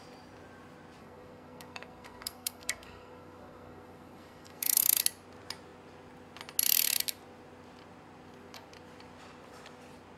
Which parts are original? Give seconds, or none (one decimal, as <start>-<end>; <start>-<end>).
0.0-1.0; 5.0-10.2